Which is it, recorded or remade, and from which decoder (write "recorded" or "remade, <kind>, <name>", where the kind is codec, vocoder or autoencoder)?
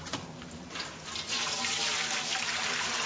remade, vocoder, BigVGAN v2